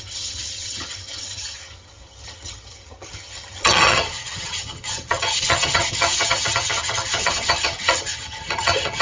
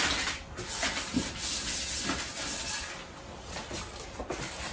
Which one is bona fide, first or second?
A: second